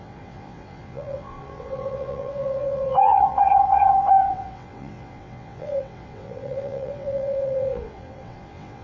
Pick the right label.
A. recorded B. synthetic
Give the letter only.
B